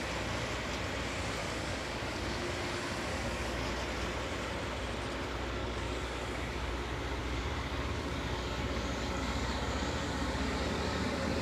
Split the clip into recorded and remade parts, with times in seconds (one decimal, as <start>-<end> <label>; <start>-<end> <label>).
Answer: 0.0-1.4 recorded; 1.4-2.5 remade; 2.5-3.1 recorded; 3.1-3.7 remade; 3.7-5.6 recorded; 5.6-6.7 remade; 6.7-7.2 recorded; 7.2-11.4 remade